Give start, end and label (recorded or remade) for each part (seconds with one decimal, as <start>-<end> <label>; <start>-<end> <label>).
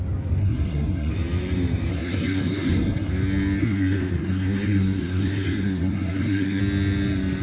0.0-0.4 recorded; 0.4-1.1 remade; 1.1-1.9 recorded; 1.9-3.1 remade; 3.1-3.6 recorded; 3.6-6.6 remade; 6.6-7.4 recorded